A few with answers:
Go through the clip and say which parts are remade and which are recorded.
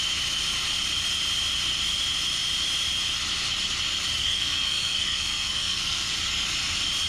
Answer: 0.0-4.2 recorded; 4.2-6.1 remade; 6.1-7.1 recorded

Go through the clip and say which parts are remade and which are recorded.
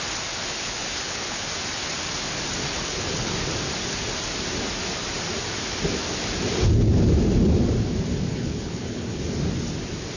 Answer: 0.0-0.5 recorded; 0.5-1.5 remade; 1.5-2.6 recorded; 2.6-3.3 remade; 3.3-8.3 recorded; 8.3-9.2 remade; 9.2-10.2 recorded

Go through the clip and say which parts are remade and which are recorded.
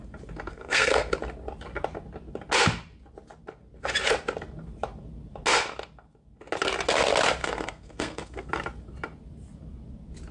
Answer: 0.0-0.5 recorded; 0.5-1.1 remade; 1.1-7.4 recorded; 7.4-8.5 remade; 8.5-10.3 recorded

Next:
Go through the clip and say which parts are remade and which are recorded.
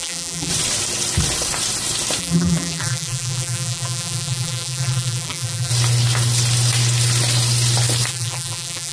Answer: 0.0-0.5 remade; 0.5-2.2 recorded; 2.2-5.7 remade; 5.7-8.1 recorded; 8.1-8.9 remade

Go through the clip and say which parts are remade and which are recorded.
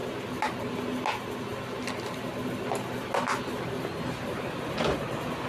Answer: 0.0-5.5 recorded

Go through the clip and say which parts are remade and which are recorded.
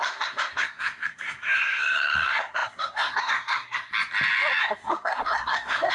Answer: 0.0-3.9 remade; 3.9-4.6 recorded; 4.6-5.9 remade